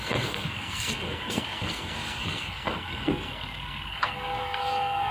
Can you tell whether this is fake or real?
fake